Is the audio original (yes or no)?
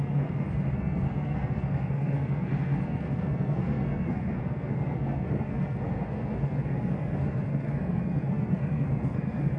no